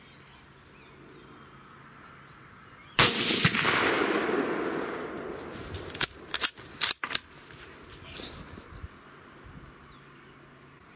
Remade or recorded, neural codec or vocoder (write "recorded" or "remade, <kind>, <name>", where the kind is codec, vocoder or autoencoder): recorded